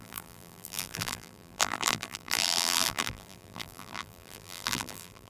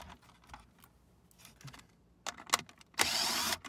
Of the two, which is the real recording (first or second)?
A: second